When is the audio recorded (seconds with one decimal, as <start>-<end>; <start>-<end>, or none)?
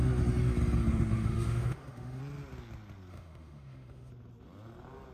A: 0.0-0.9; 2.2-3.1; 4.1-5.1